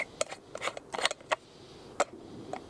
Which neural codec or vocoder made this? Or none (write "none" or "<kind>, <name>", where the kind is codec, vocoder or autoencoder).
none